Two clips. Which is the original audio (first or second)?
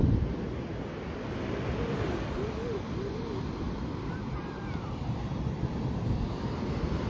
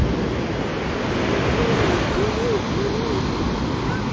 second